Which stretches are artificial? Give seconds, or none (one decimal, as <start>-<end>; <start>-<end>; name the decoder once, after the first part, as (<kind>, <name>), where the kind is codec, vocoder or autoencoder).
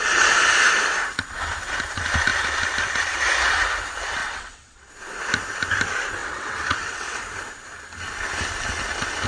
4.2-4.9 (vocoder, WaveNeXt); 6.2-7.2